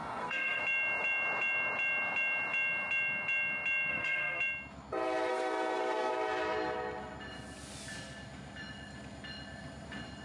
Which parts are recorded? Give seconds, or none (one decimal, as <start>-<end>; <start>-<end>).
0.6-3.9; 4.4-5.3; 6.1-10.2